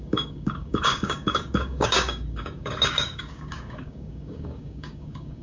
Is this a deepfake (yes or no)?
yes